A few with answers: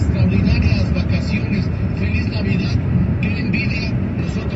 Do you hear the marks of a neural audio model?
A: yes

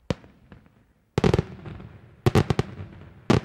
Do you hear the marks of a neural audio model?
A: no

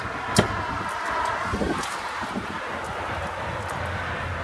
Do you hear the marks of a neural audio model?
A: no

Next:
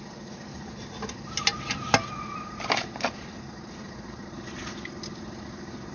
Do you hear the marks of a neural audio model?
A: no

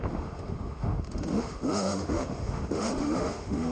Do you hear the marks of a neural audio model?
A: yes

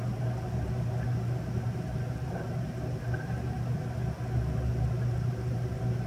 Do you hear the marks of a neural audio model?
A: no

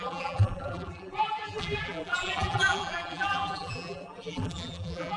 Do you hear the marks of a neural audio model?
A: yes